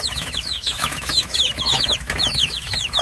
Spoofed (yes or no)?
yes